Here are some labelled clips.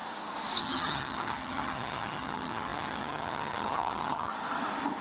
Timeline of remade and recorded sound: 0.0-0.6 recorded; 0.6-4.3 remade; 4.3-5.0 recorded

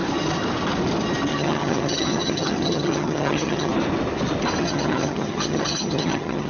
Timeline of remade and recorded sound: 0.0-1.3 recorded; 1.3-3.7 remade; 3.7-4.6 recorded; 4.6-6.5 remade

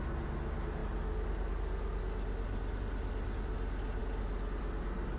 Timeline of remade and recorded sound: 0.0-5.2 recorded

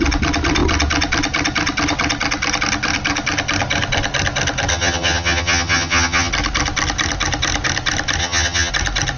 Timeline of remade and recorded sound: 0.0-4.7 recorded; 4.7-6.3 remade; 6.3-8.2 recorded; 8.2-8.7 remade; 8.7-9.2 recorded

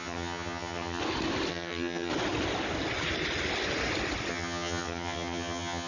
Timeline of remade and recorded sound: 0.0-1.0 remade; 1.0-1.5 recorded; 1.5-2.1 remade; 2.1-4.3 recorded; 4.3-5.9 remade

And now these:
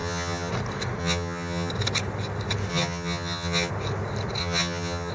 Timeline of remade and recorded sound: 0.0-0.5 remade; 0.5-1.0 recorded; 1.0-1.7 remade; 1.7-2.7 recorded; 2.7-3.7 remade; 3.7-4.4 recorded; 4.4-5.1 remade

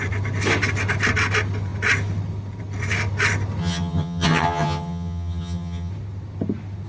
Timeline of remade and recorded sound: 0.0-3.6 recorded; 3.6-5.9 remade; 5.9-6.9 recorded

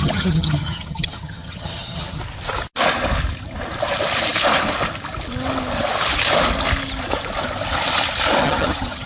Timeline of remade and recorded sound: 0.0-2.2 remade; 2.2-8.4 recorded; 8.4-9.1 remade